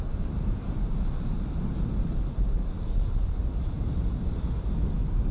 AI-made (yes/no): no